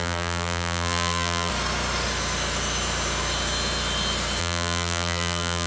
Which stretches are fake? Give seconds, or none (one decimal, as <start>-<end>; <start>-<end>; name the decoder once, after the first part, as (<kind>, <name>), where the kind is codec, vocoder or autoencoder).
0.0-1.5 (vocoder, BigVGAN v2); 4.4-5.7